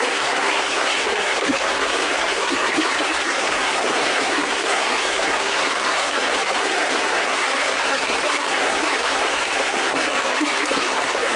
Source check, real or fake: fake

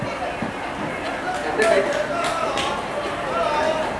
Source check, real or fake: real